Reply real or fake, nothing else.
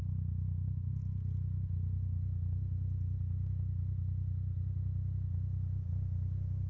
real